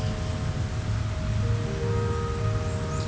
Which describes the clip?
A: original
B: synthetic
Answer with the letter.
A